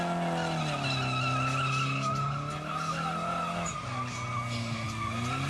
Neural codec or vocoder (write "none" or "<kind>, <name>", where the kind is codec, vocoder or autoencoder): none